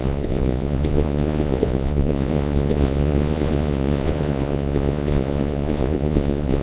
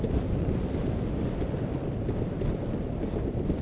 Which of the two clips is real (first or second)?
second